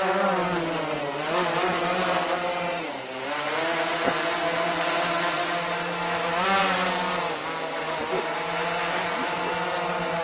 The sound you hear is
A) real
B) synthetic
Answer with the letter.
B